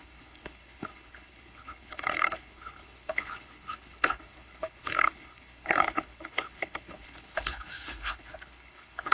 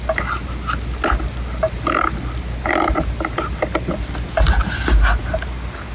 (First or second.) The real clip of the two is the second